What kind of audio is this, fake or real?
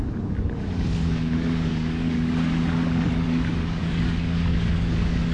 fake